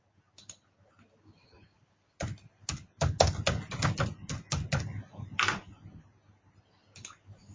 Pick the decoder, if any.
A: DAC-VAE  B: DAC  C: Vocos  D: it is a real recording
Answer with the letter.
D